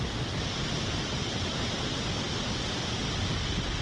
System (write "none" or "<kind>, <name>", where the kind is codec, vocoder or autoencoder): none